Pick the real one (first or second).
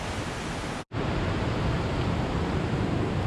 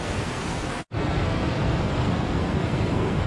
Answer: first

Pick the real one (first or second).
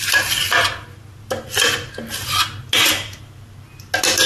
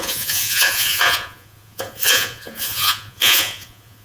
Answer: first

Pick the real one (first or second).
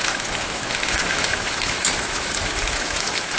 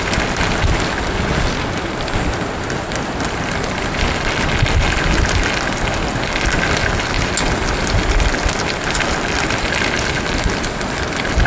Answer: second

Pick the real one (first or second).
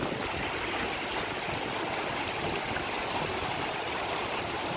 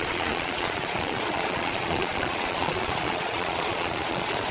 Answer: first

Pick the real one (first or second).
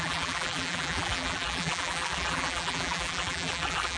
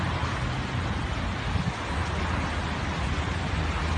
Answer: second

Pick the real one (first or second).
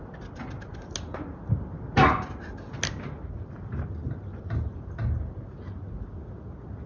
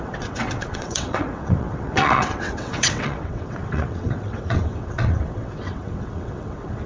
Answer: first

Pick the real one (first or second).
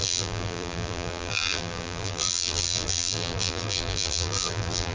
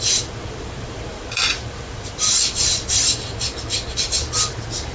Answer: second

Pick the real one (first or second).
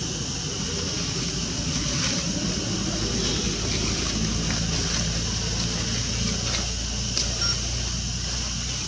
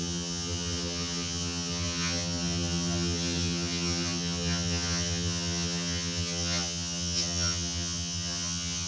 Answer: first